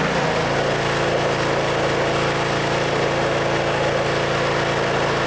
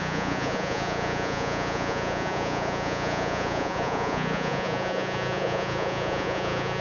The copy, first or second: second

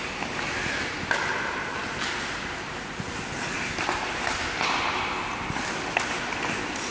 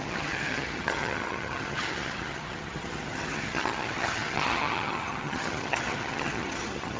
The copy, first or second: second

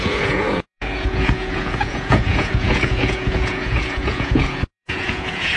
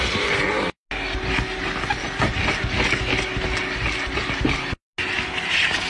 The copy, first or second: first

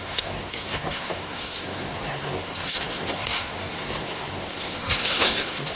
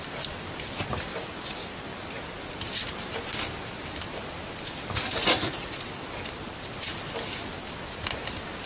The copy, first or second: first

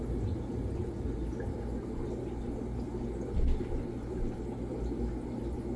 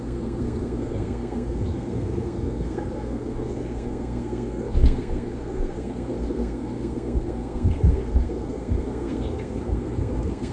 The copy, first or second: second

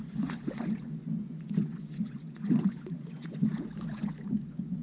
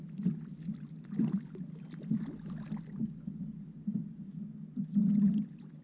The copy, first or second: first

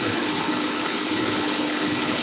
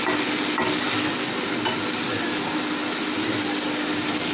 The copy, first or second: first